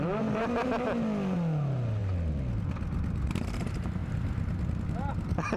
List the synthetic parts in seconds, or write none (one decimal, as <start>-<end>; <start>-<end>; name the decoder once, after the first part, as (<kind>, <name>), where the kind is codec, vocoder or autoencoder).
none